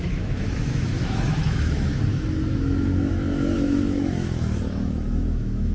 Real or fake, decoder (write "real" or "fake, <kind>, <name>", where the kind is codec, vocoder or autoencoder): fake, autoencoder, DAC-VAE